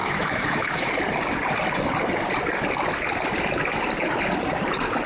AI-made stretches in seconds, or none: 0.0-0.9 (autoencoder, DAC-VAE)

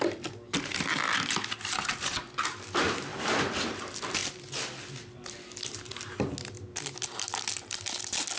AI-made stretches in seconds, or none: none

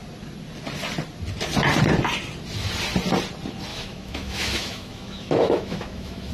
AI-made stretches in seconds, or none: 3.7-6.3 (autoencoder, DAC-VAE)

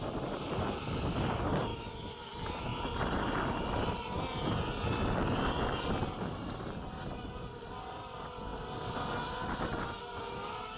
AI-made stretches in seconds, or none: 1.7-2.3 (autoencoder, DAC-VAE)

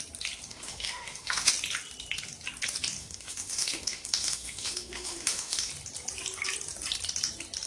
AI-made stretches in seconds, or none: 0.5-1.5 (autoencoder, DAC-VAE); 3.0-5.7